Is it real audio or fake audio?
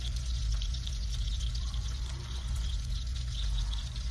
fake